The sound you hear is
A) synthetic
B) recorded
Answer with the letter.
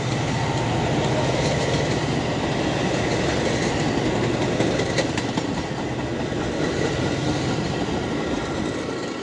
B